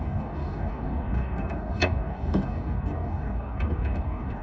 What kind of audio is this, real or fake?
fake